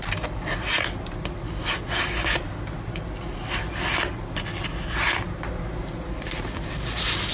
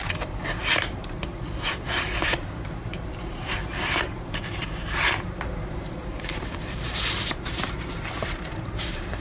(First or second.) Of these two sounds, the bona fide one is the first